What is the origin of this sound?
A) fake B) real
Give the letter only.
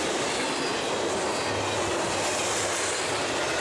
B